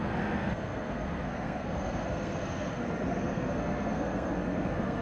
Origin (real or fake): fake